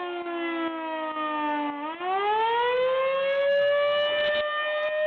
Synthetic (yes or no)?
no